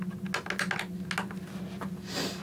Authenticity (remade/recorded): recorded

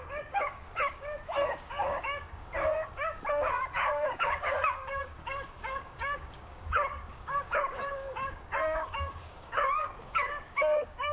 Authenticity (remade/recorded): remade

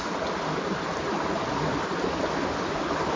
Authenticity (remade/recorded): recorded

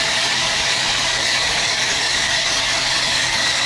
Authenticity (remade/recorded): remade